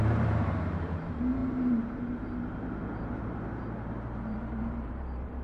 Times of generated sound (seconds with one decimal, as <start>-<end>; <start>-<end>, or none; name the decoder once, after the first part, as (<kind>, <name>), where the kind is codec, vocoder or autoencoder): 0.0-5.4 (vocoder, BigVGAN v2)